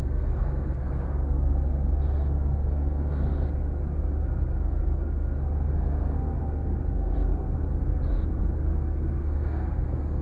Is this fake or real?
fake